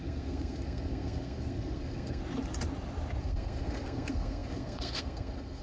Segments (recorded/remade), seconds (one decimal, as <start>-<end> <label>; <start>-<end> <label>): 0.0-2.2 remade; 2.2-3.2 recorded; 3.2-5.6 remade